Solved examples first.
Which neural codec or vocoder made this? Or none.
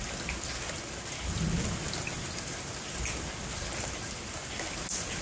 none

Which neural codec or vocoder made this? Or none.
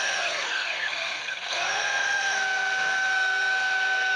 codec, SNAC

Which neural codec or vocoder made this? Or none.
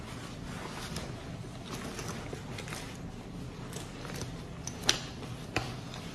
none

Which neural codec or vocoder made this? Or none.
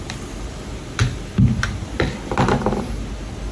none